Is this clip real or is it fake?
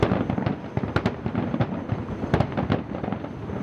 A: real